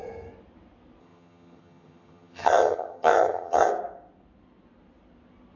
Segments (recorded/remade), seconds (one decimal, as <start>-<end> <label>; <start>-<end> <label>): 0.0-1.0 recorded; 1.0-3.7 remade; 3.7-5.6 recorded